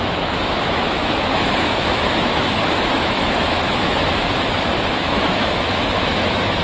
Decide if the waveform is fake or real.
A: fake